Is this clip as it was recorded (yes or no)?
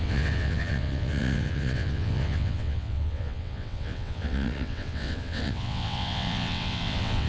no